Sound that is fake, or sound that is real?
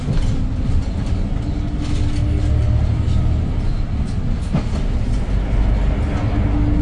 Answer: real